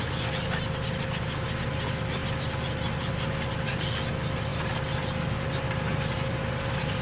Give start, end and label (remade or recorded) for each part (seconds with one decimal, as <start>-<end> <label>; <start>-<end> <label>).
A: 0.0-5.9 recorded; 5.9-7.0 remade